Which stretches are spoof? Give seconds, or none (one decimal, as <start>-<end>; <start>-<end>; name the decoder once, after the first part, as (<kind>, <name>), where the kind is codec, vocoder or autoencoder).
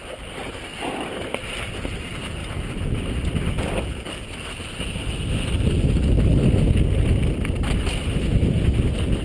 2.4-3.8 (vocoder, BigVGAN v2)